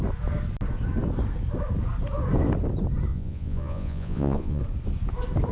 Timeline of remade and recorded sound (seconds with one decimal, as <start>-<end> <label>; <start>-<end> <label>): 0.0-3.1 recorded; 3.1-4.6 remade; 4.6-5.5 recorded